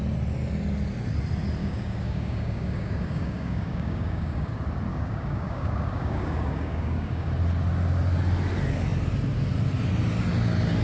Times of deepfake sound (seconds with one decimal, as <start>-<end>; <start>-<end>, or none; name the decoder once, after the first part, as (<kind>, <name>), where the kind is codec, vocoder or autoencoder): 1.6-4.5 (codec, DAC); 4.9-7.3